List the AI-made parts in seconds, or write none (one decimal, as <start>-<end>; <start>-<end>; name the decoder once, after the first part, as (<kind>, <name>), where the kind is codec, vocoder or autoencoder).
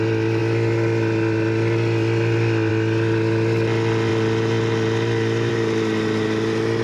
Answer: none